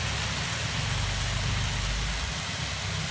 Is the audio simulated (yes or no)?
no